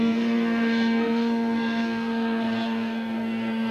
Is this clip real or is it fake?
fake